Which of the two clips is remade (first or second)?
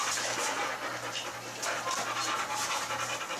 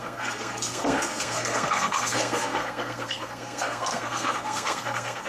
second